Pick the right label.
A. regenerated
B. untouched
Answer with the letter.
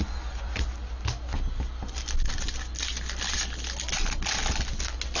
B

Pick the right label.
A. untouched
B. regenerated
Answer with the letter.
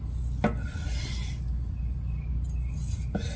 A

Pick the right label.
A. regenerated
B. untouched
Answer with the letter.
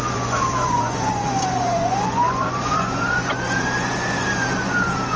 A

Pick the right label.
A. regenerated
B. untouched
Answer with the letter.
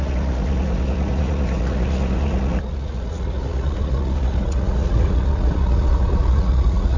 A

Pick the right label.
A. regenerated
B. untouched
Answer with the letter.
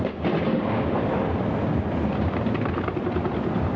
B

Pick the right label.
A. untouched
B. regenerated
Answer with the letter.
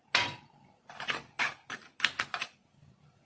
A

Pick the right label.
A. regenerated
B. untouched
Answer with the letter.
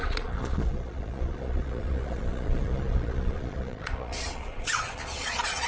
A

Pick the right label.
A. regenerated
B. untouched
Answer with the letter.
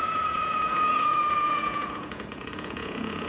A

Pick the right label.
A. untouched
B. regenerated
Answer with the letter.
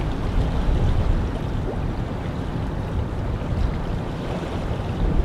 A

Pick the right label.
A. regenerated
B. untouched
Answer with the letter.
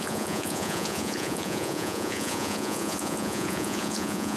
A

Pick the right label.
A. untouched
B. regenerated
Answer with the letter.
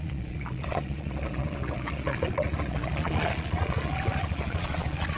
B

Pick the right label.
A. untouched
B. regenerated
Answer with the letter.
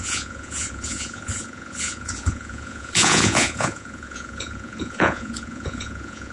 B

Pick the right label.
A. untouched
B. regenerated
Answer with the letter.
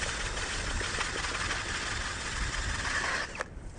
A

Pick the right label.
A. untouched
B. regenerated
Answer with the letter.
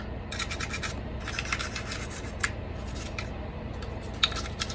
A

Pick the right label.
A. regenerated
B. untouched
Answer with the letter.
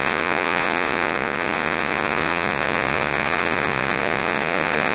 A